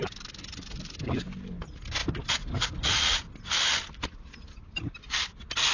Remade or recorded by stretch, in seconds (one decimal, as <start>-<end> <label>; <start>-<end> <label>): 0.0-5.7 recorded